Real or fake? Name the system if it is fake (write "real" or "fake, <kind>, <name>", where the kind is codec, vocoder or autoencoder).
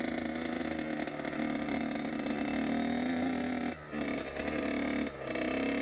real